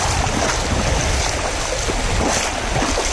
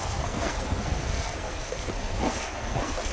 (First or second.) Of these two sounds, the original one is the first